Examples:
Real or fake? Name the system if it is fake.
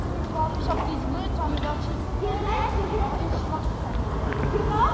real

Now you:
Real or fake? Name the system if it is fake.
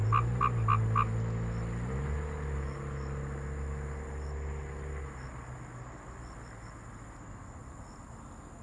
real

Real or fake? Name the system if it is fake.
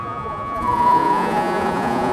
fake, vocoder, Vocos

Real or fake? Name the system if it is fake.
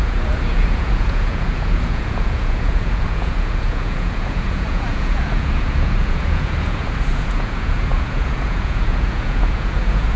fake, vocoder, Vocos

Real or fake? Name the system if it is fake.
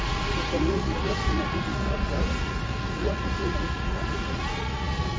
fake, vocoder, Vocos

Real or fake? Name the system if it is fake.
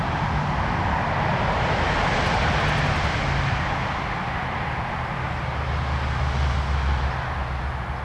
real